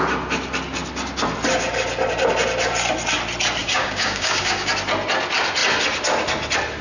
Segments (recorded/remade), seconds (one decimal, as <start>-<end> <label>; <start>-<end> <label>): 0.0-3.6 recorded; 3.6-4.7 remade; 4.7-6.8 recorded

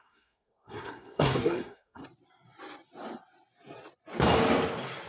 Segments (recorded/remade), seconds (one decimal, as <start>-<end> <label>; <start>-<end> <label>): 0.0-2.0 remade; 2.0-5.1 recorded

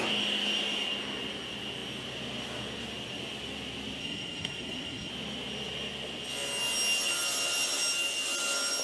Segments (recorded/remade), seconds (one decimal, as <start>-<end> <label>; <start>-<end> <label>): 0.0-4.0 recorded; 4.0-5.1 remade; 5.1-8.8 recorded

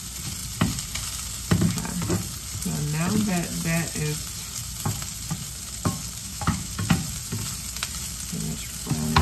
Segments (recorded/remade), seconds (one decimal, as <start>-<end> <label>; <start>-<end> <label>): 0.0-6.2 recorded; 6.2-6.7 remade; 6.7-9.2 recorded

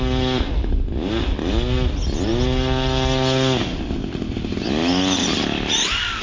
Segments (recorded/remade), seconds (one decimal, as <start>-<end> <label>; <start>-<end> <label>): 0.0-6.2 recorded

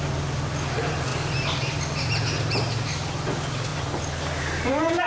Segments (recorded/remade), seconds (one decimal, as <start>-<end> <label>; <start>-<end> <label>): 0.0-5.1 recorded

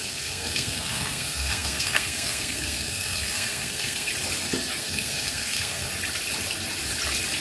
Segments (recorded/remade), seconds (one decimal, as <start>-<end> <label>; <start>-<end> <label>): 0.0-4.1 remade; 4.1-4.8 recorded; 4.8-5.9 remade; 5.9-7.4 recorded